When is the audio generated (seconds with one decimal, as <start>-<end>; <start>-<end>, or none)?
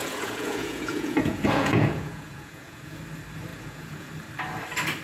0.0-3.0; 3.5-4.1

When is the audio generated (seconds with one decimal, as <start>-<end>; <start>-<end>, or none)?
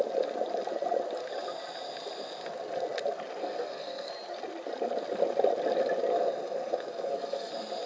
3.4-4.1; 6.1-7.5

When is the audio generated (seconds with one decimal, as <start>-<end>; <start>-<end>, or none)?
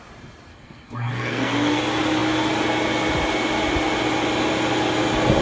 0.5-1.8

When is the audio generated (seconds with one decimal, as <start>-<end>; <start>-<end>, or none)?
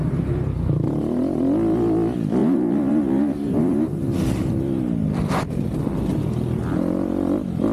0.0-1.2; 2.4-4.2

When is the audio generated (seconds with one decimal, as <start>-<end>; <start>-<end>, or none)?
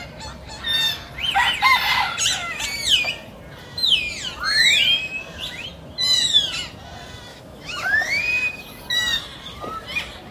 7.3-8.2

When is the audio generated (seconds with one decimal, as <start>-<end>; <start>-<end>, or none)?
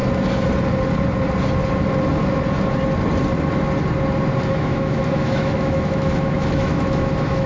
4.5-7.5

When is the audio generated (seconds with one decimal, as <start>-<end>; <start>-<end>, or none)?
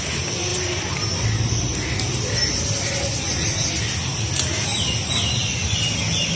none